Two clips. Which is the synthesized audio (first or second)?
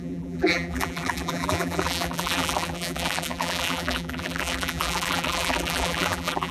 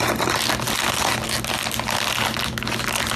first